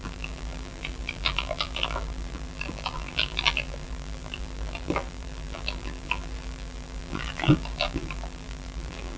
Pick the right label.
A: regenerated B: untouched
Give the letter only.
A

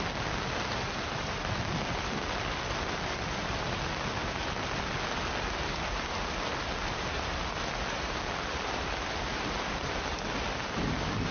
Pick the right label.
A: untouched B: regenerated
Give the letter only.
A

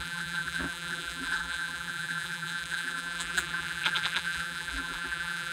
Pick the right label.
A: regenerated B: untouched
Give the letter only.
A